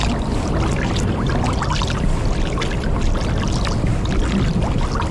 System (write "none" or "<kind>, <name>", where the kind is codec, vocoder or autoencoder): none